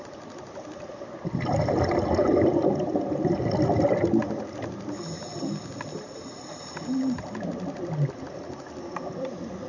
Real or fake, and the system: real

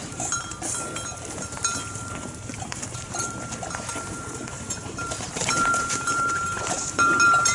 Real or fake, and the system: fake, vocoder, BigVGAN v2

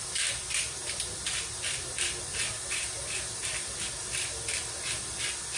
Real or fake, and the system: fake, vocoder, BigVGAN v2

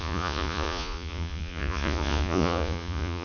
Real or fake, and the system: fake, vocoder, Vocos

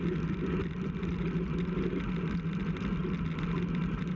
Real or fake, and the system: real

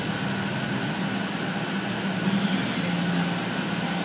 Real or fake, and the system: real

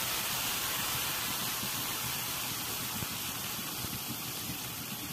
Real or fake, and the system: fake, vocoder, BigVGAN v2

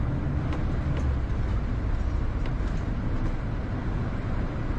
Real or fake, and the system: real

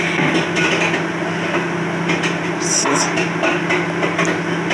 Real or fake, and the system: real